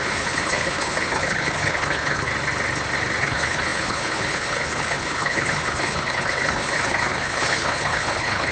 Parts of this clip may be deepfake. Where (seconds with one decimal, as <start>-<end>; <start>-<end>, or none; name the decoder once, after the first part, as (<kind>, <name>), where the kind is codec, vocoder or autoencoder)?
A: 0.0-2.3 (codec, HILCodec); 3.2-8.5

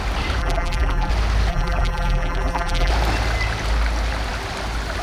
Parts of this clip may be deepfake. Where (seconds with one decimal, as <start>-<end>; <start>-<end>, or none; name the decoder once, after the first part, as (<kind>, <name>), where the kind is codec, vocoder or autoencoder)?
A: 0.4-1.1 (vocoder, BigVGAN v2); 1.5-2.9

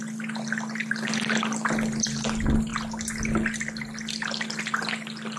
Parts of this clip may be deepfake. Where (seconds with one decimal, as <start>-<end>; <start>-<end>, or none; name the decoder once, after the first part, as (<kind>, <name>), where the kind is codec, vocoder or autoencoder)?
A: none

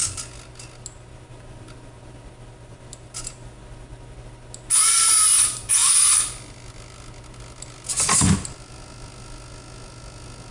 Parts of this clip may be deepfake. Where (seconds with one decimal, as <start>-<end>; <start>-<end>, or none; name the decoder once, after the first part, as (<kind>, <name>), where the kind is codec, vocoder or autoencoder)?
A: none

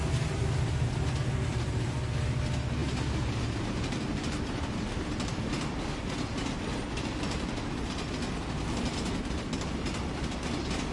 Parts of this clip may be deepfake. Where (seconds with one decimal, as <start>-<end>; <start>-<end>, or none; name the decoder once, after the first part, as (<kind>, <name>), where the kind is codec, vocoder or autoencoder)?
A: none

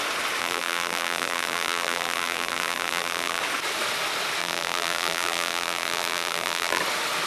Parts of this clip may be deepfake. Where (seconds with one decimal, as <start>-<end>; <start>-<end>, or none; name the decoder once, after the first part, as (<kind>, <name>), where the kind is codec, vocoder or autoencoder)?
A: 0.4-3.4 (vocoder, BigVGAN v2); 4.4-6.8